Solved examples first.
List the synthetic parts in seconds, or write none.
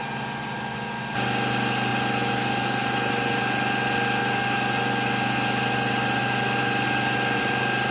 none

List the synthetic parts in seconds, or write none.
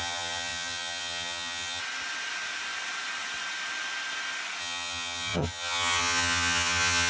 0.0-1.8; 4.6-7.1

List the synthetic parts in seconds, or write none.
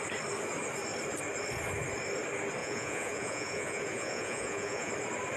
2.6-4.9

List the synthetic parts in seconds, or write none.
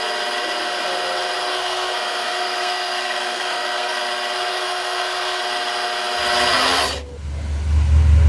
1.5-4.0; 4.5-5.4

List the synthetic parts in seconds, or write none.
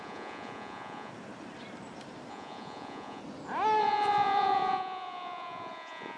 0.0-1.1; 2.3-3.2; 3.8-6.2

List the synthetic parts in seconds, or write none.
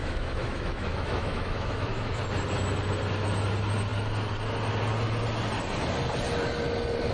0.0-2.2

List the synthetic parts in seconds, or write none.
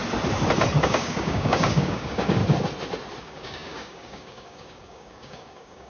0.8-2.4; 3.2-5.9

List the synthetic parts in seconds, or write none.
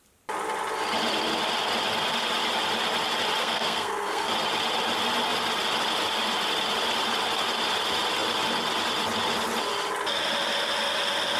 3.4-4.3